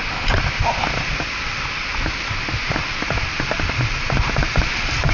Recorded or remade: recorded